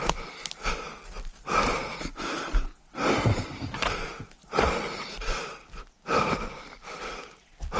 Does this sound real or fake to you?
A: real